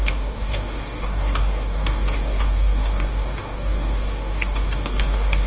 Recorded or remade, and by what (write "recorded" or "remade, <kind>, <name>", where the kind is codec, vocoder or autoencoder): remade, codec, DAC